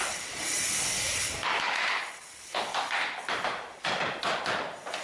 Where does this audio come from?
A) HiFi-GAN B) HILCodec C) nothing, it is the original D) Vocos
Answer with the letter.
C